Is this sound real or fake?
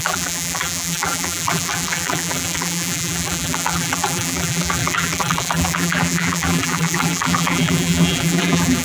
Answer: fake